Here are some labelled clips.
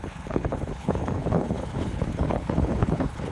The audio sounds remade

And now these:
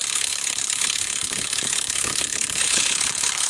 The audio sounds remade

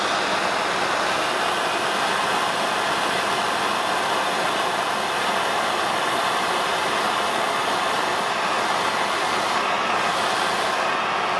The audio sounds recorded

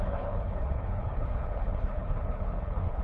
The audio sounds remade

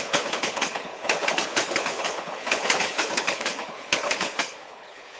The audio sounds remade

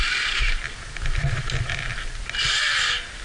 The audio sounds recorded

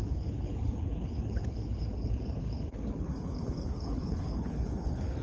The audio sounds remade